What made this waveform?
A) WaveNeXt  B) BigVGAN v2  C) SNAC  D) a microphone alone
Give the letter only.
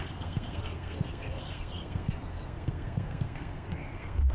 C